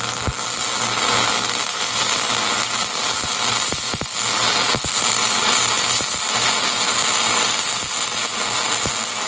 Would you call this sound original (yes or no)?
yes